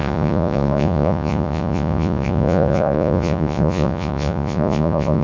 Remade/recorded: remade